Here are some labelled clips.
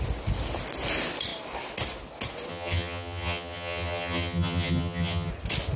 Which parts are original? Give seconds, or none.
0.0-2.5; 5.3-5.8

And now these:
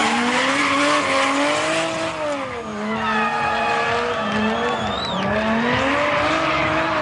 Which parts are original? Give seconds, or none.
0.8-7.0

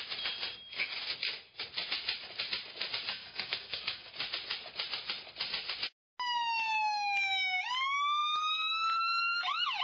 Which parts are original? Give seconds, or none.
0.0-3.1; 4.1-9.8

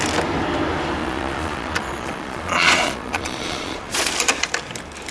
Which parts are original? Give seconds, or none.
0.0-1.0; 4.1-5.1